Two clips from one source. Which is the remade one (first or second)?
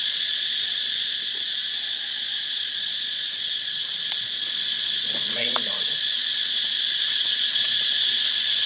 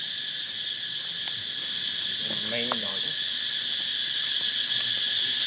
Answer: first